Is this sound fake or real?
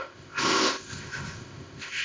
fake